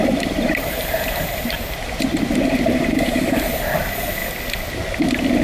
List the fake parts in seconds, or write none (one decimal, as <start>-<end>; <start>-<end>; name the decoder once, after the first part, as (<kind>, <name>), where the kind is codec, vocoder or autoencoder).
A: 0.0-3.2 (vocoder, BigVGAN v2)